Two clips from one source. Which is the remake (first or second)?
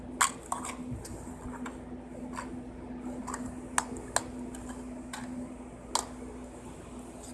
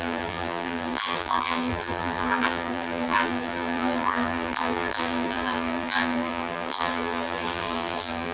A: second